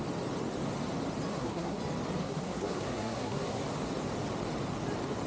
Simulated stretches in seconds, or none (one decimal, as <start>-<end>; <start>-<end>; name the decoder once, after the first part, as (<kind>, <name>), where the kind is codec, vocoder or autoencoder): 1.3-1.8 (codec, SNAC); 2.2-3.6